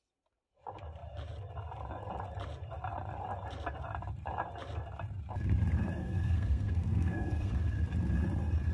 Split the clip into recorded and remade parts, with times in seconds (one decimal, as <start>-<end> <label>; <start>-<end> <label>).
0.0-6.0 recorded; 6.0-7.5 remade; 7.5-8.7 recorded